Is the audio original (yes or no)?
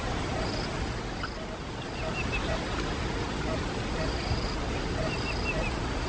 yes